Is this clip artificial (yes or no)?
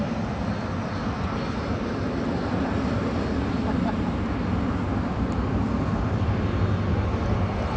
no